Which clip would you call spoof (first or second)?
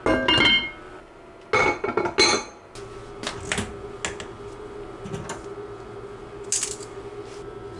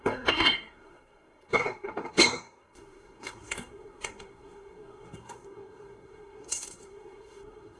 second